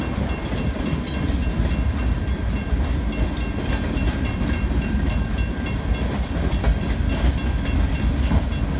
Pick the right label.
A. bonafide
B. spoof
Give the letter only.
A